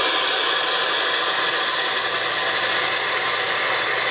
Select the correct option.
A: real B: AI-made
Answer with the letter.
A